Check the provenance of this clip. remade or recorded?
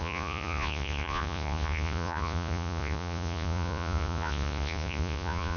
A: remade